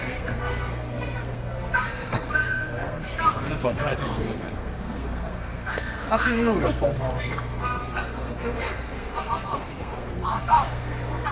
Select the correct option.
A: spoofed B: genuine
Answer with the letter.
A